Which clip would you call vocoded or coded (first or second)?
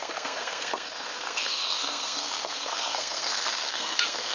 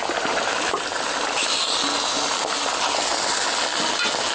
first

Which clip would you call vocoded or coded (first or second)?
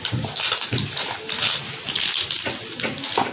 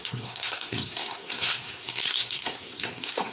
second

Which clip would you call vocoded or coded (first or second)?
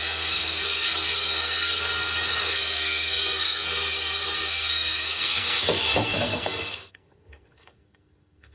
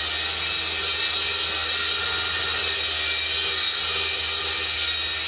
first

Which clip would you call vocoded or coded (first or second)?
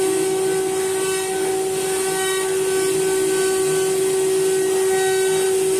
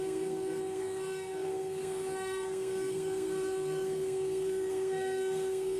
second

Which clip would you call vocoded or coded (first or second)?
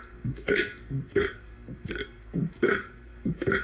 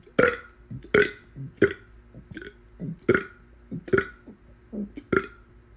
first